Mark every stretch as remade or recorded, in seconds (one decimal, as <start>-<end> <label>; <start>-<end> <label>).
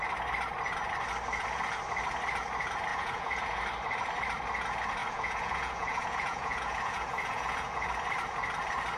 0.0-2.9 recorded; 2.9-3.6 remade; 3.6-5.0 recorded; 5.0-7.9 remade; 7.9-9.0 recorded